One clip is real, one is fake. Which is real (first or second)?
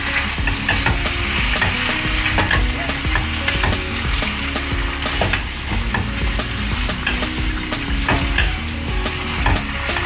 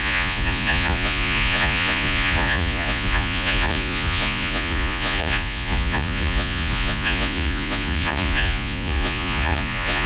first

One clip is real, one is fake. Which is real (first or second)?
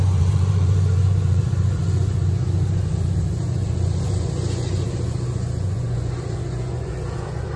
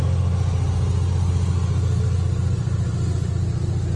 second